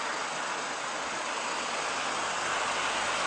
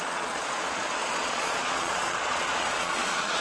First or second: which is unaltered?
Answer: first